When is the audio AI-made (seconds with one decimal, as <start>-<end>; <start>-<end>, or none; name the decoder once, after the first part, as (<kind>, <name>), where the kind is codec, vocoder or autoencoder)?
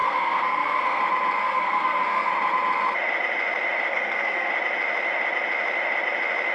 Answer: 0.0-1.0 (codec, SNAC); 1.4-2.3; 3.9-4.5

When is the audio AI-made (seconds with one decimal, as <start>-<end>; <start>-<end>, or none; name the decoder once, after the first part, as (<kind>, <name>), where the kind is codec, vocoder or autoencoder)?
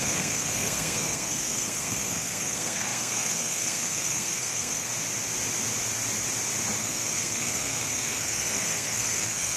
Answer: 0.0-4.9 (codec, SNAC); 6.8-9.6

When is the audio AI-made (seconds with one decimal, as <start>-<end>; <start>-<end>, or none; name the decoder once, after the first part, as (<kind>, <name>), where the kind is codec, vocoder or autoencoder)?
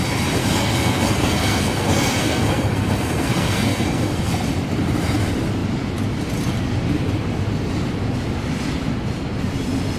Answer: 0.4-4.3 (codec, SNAC)